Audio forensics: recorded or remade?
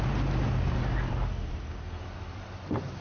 recorded